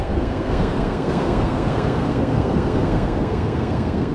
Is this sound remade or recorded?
remade